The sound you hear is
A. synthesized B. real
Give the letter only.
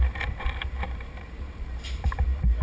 A